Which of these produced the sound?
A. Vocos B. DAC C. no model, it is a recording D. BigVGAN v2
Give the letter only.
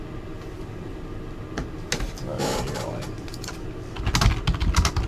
C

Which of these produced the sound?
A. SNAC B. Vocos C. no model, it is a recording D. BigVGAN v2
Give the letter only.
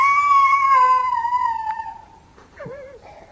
D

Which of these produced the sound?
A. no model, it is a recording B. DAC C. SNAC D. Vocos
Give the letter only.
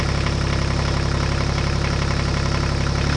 A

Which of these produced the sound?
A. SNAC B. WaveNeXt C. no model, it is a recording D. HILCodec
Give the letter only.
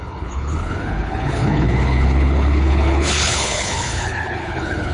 D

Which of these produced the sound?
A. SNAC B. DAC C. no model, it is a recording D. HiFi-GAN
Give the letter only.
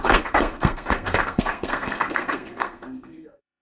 A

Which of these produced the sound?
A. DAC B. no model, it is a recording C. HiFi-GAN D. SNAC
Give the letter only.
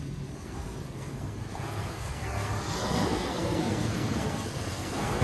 D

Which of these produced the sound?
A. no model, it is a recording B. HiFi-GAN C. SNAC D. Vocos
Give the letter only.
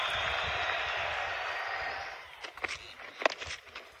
A